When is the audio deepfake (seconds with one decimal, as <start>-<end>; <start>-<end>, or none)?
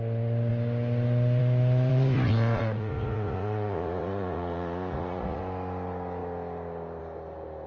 1.9-5.4